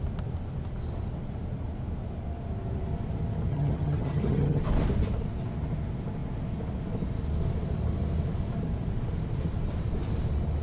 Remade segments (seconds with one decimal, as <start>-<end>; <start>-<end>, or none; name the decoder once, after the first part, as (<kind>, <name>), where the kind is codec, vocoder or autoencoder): 3.5-4.6 (vocoder, HiFi-GAN)